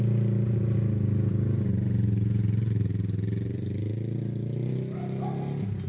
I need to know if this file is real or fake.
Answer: real